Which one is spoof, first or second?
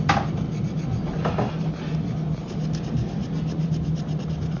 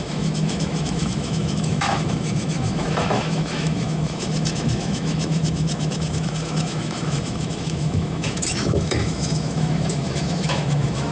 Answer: second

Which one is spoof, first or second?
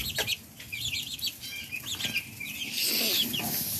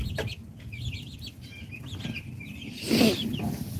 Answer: second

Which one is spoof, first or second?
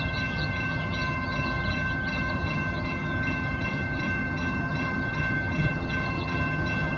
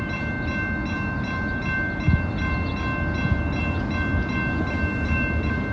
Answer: first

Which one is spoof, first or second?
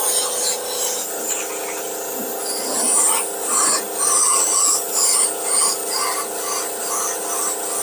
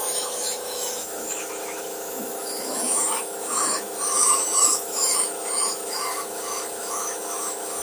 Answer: second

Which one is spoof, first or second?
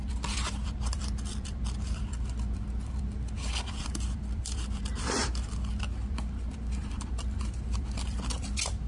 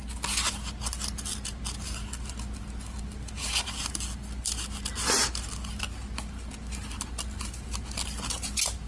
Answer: first